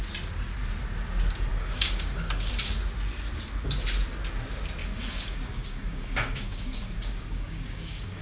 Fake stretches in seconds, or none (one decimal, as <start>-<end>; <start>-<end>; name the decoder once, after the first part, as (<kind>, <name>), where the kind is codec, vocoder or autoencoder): 1.5-2.5 (codec, DAC); 4.8-8.2